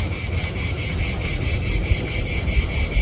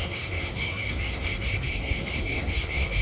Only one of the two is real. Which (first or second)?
first